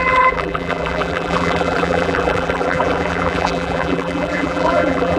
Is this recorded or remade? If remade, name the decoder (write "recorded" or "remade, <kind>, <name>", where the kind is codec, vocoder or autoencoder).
remade, vocoder, BigVGAN v2